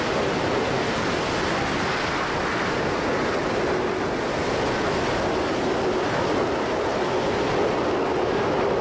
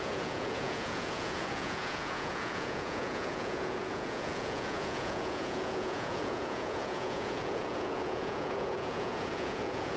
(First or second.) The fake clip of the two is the second